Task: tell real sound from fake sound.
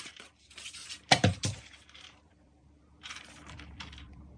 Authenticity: fake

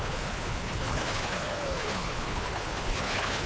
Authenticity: fake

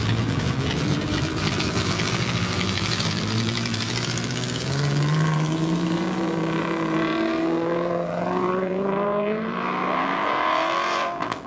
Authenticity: fake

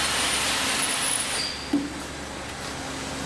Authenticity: real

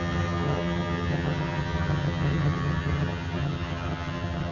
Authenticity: fake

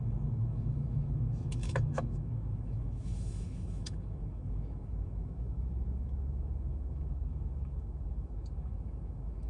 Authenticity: fake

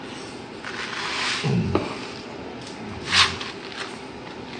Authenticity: real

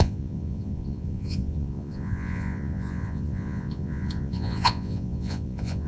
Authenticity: fake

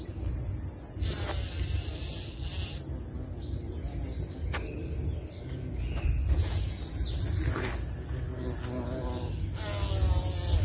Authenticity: real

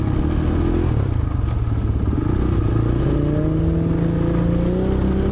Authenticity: real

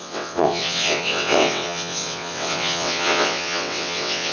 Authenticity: fake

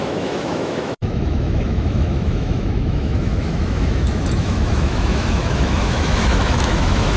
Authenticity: fake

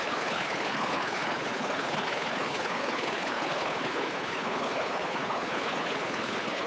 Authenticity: fake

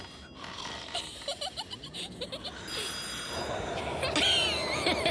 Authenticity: real